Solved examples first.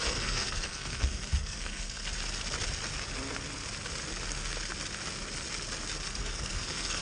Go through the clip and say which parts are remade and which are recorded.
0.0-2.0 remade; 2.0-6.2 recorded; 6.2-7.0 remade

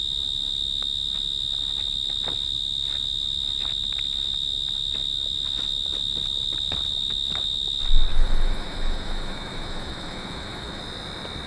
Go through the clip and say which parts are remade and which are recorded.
0.0-8.1 recorded; 8.1-10.8 remade; 10.8-11.5 recorded

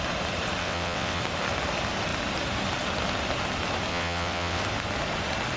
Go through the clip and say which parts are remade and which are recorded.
0.0-0.6 recorded; 0.6-1.2 remade; 1.2-3.9 recorded; 3.9-4.6 remade; 4.6-5.6 recorded

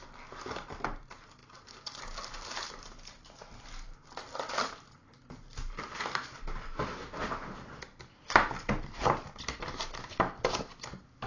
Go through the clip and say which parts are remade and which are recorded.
0.0-11.3 recorded

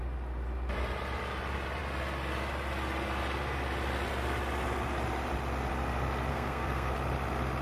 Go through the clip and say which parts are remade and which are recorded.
0.0-6.3 recorded; 6.3-6.9 remade; 6.9-7.6 recorded

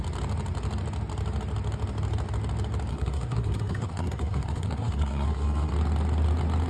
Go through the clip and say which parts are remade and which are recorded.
0.0-2.9 recorded; 2.9-5.7 remade; 5.7-6.7 recorded

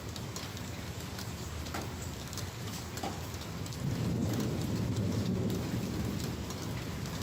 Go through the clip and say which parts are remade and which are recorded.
0.0-0.5 recorded; 0.5-2.9 remade; 2.9-7.2 recorded

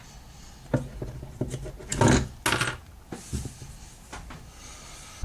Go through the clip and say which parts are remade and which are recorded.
0.0-5.2 recorded